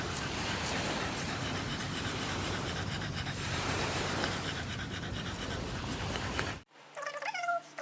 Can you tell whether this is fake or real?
fake